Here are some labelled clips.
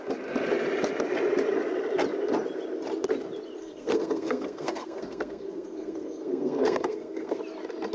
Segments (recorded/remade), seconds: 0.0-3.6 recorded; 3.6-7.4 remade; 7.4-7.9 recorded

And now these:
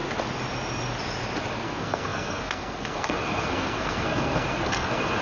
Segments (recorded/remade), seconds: 0.0-1.5 recorded; 1.5-5.2 remade

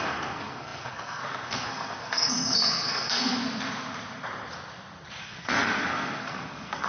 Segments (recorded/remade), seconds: 0.0-3.4 remade; 3.4-5.2 recorded; 5.2-6.9 remade

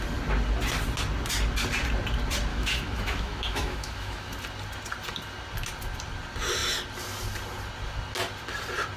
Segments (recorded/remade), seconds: 0.0-2.5 recorded; 2.5-4.3 remade; 4.3-9.0 recorded

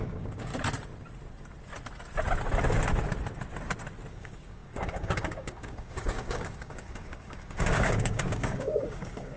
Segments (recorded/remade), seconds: 0.0-0.5 remade; 0.5-4.1 recorded; 4.1-9.4 remade

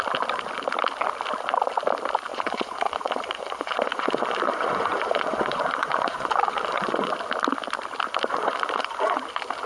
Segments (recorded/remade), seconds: 0.0-2.3 recorded; 2.3-7.1 remade; 7.1-8.3 recorded; 8.3-9.2 remade; 9.2-9.7 recorded

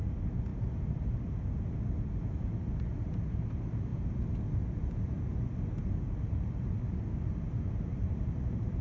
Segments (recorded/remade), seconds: 0.0-7.9 recorded; 7.9-8.8 remade